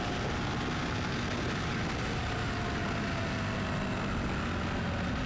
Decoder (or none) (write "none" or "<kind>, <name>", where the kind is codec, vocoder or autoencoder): none